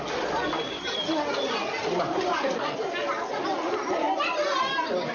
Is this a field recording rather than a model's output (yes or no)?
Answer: yes